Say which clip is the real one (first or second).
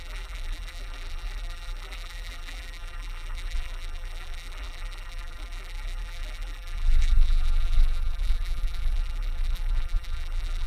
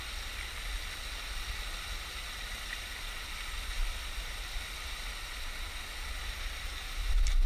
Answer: second